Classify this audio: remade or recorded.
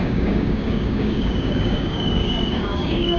remade